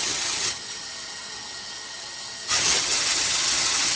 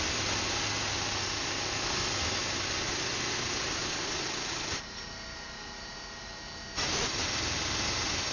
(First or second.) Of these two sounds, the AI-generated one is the first